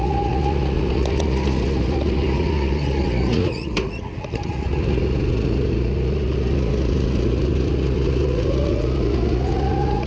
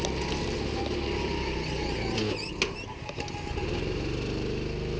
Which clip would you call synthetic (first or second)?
first